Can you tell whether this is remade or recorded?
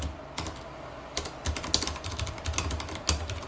recorded